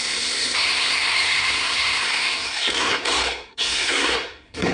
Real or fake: fake